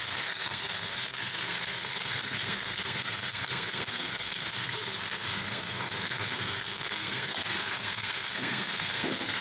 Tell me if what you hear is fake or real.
fake